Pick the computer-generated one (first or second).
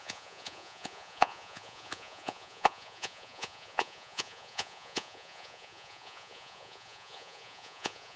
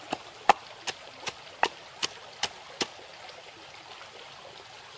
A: first